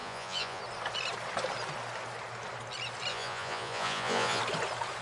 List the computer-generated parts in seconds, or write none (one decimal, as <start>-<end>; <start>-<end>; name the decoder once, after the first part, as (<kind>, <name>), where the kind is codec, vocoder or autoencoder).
0.0-0.6 (vocoder, Vocos); 3.1-4.4